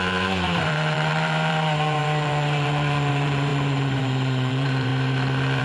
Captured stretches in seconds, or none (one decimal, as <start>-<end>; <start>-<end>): 4.9-5.6